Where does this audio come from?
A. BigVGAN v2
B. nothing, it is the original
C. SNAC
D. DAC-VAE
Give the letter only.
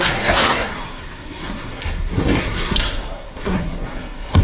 C